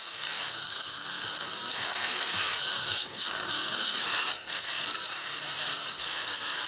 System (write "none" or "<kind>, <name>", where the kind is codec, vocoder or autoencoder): codec, SNAC